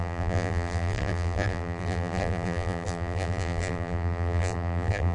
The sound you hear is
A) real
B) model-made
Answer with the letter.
B